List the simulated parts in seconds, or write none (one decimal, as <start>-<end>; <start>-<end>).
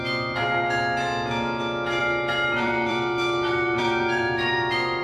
2.0-5.0